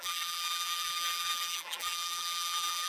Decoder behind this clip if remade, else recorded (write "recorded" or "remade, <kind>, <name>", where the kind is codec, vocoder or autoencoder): remade, vocoder, BigVGAN v2